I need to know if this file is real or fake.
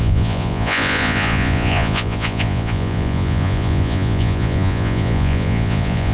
fake